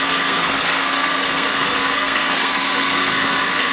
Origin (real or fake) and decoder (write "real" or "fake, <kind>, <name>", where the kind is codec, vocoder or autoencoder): fake, codec, SNAC